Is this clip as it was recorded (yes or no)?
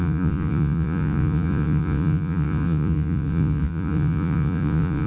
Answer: no